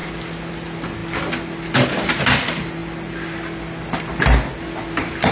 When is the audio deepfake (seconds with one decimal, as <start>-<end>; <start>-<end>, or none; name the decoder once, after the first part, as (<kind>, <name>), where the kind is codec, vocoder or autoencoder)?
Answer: none